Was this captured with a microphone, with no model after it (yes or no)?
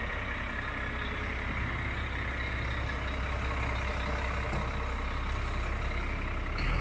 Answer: yes